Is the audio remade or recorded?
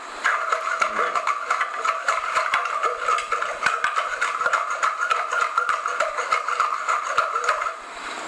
remade